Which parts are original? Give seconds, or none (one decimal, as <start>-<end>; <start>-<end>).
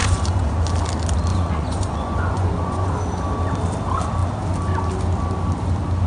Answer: 0.5-1.3; 2.9-6.1